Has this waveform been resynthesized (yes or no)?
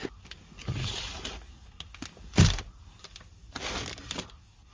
no